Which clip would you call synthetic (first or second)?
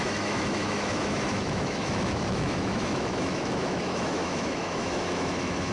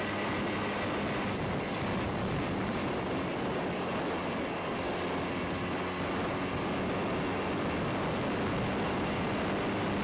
first